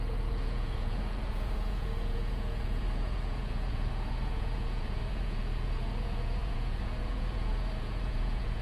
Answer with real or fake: fake